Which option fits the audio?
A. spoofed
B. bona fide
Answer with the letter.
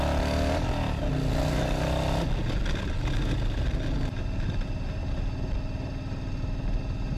B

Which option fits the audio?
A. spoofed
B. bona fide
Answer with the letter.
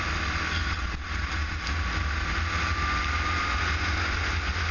B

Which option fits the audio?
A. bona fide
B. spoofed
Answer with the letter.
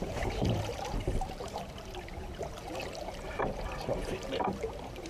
B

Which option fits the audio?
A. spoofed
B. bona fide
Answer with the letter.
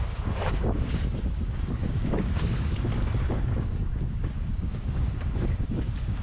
A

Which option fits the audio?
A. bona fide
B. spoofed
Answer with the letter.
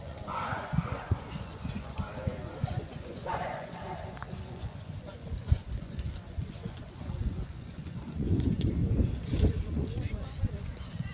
B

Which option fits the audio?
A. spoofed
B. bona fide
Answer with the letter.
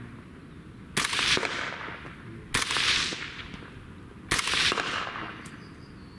B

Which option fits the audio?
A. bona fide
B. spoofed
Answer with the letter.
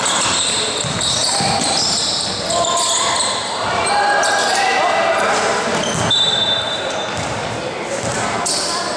A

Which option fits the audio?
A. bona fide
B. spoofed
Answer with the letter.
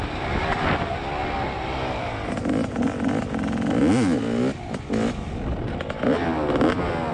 A